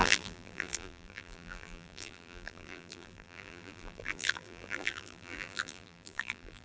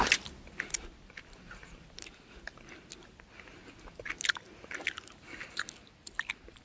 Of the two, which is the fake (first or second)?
first